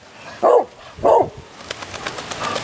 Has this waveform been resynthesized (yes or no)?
no